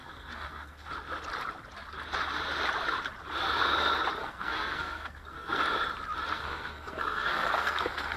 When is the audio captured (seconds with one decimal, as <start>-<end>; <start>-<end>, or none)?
0.9-4.2; 5.6-6.3